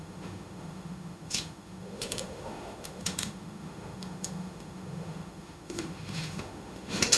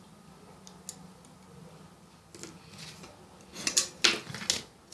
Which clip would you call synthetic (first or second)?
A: first